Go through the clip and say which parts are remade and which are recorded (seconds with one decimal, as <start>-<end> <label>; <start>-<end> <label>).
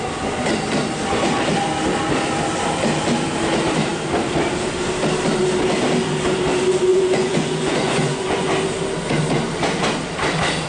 0.0-6.9 recorded; 6.9-8.5 remade; 8.5-10.7 recorded